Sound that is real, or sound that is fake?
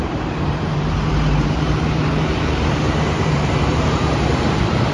fake